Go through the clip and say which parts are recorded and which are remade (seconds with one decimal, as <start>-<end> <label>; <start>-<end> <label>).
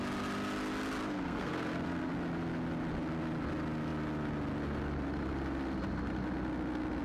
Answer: 0.0-1.0 recorded; 1.0-2.1 remade; 2.1-7.0 recorded